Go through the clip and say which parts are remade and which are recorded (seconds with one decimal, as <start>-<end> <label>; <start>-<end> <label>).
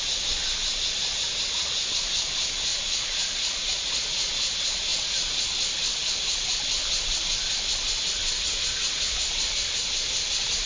0.0-2.7 recorded; 2.7-4.3 remade; 4.3-8.2 recorded; 8.2-9.5 remade; 9.5-10.7 recorded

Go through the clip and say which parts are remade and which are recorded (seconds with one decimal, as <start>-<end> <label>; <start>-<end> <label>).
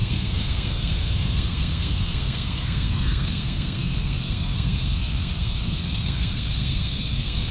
0.0-7.5 remade